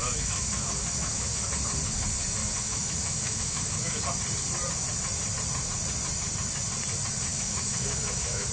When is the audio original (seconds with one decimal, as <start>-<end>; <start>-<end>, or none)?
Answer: 1.5-2.4; 4.0-7.3